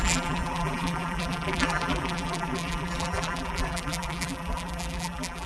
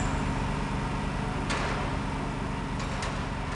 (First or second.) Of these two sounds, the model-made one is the first